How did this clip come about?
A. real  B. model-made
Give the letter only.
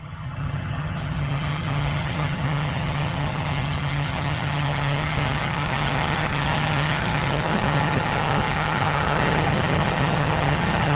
B